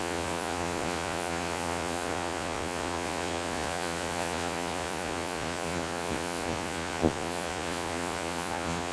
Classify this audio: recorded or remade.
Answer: remade